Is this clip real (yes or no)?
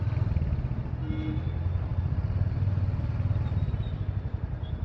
yes